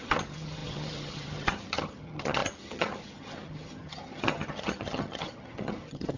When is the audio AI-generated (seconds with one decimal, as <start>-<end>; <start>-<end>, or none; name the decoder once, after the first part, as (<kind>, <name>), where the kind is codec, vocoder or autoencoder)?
0.0-6.2 (vocoder, HiFi-GAN)